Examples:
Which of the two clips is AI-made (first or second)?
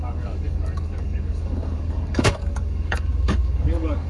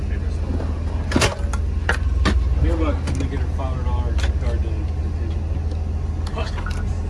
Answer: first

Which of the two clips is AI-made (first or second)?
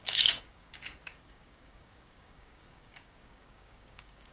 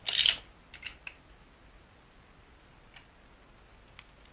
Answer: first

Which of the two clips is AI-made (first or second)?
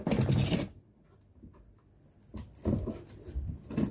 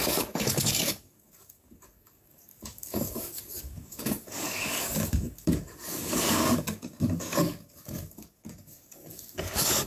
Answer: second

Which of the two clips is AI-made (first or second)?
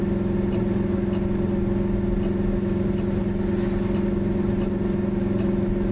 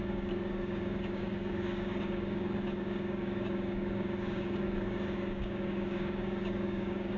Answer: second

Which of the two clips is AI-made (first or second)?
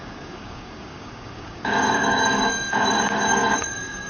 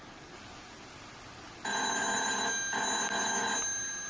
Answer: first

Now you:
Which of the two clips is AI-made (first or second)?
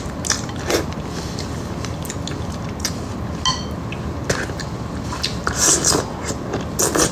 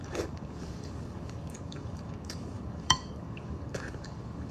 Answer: second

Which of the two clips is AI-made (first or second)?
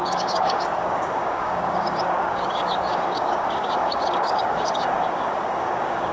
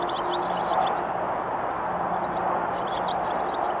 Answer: first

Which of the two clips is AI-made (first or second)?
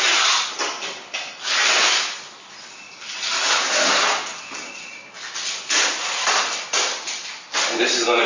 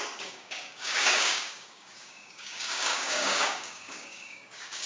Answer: second